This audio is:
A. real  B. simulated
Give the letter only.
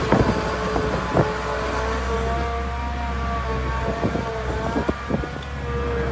A